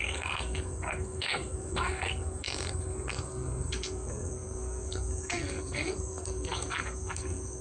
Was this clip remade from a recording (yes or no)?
yes